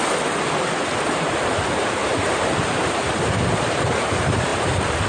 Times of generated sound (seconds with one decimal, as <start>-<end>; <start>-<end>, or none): 0.9-5.1